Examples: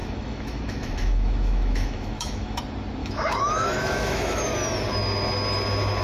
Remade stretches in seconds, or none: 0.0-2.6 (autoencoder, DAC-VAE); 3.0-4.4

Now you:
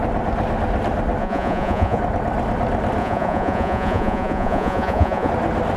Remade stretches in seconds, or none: 1.2-2.0 (vocoder, Vocos); 3.0-5.3

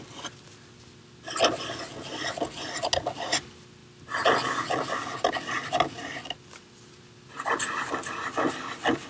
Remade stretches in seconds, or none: none

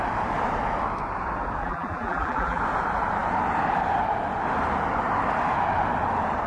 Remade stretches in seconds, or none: 1.6-2.6 (vocoder, BigVGAN v2)